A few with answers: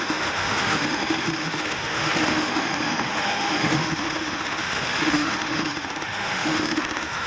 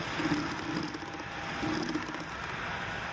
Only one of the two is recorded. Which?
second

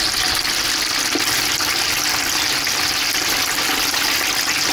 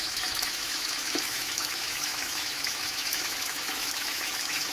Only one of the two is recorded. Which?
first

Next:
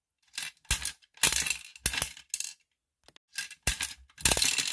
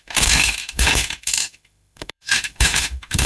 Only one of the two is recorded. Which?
first